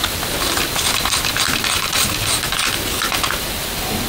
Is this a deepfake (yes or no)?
no